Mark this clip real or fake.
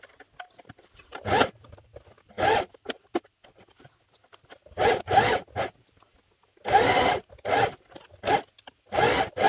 fake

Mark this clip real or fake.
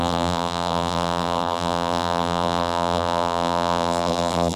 fake